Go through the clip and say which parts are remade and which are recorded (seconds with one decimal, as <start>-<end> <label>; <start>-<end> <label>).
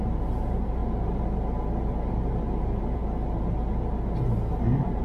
0.0-0.8 remade; 0.8-2.6 recorded; 2.6-3.0 remade; 3.0-4.5 recorded; 4.5-5.0 remade